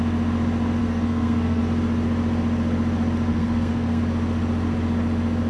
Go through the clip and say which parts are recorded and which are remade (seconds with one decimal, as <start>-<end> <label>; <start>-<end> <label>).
0.0-0.8 recorded; 0.8-1.6 remade; 1.6-3.3 recorded; 3.3-4.0 remade; 4.0-5.5 recorded